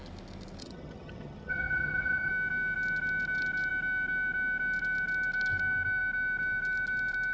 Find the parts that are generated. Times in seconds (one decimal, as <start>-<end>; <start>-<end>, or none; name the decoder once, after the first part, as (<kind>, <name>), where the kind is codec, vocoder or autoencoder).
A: 0.6-2.3 (vocoder, HiFi-GAN)